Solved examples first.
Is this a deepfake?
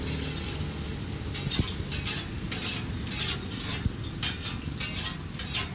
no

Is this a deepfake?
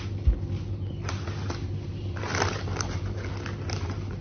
no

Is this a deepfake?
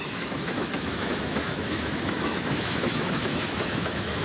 yes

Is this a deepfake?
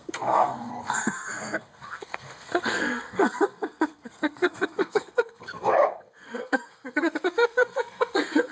yes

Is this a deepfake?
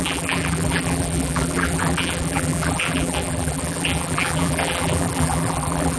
yes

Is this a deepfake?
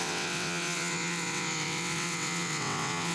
yes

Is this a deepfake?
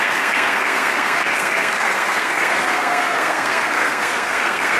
yes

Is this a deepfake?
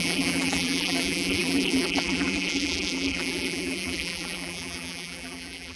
yes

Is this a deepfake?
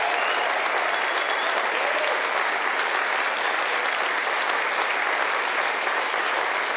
no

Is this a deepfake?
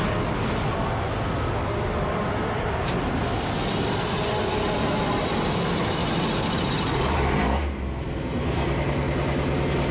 no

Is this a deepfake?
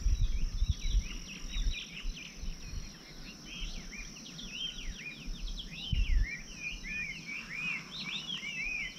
no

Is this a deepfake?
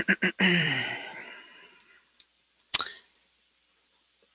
yes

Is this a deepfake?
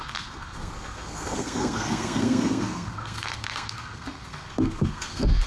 yes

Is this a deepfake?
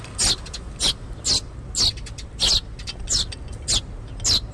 no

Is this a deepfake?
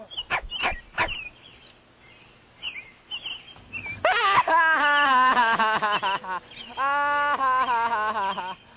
no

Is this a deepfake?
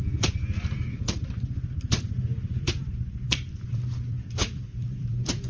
yes